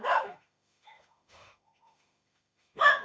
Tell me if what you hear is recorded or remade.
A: remade